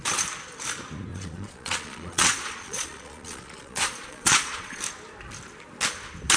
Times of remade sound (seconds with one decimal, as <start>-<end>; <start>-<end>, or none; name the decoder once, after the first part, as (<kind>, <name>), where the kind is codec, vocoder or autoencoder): 1.1-4.8 (vocoder, Vocos)